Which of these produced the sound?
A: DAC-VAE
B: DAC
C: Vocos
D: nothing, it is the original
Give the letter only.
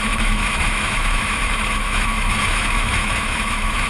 A